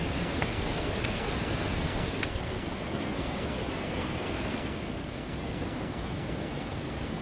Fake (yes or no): yes